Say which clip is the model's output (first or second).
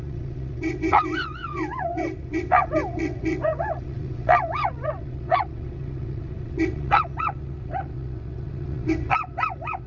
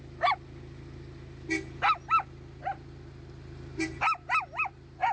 first